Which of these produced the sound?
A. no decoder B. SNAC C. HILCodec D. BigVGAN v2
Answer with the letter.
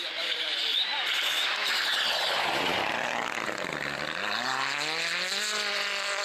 A